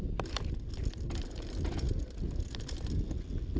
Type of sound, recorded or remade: recorded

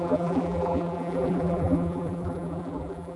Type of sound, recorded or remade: remade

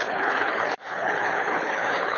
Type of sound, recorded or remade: remade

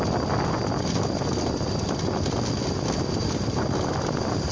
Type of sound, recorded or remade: recorded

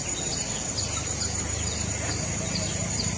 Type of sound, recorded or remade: recorded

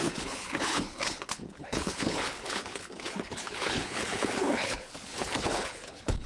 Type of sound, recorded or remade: remade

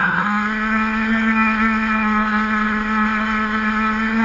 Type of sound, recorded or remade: remade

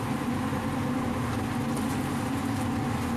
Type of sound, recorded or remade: recorded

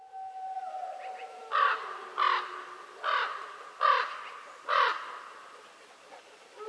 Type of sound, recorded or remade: recorded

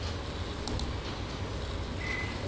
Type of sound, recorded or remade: recorded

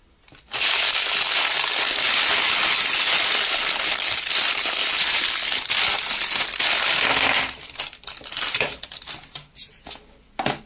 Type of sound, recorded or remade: recorded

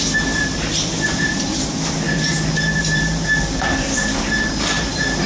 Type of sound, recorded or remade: remade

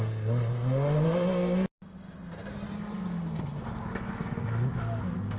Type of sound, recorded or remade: recorded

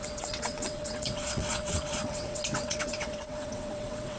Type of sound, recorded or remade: remade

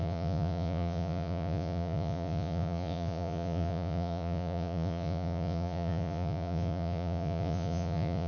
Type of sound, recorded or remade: remade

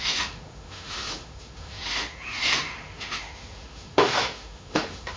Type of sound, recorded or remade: remade